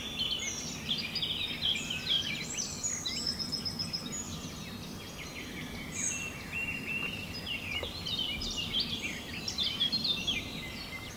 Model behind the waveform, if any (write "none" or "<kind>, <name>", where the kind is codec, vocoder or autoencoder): none